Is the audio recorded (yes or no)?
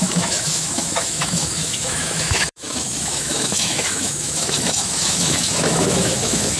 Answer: no